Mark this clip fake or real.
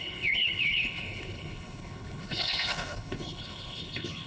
fake